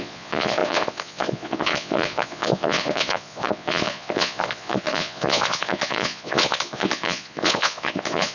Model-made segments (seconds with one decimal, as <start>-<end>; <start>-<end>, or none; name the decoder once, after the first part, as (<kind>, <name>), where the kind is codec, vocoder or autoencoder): 0.0-8.3 (vocoder, Vocos)